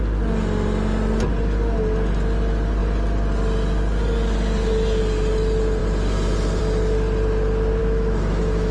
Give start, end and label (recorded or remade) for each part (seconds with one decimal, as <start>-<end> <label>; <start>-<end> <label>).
0.0-7.8 recorded; 7.8-8.7 remade